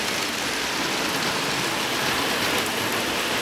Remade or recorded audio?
recorded